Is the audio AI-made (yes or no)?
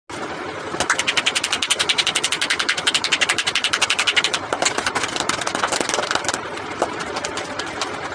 no